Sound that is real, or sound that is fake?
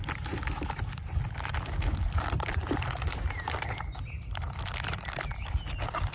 real